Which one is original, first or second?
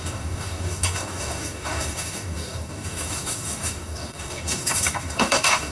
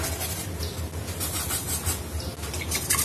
second